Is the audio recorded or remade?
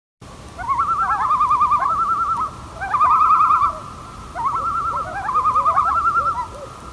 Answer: recorded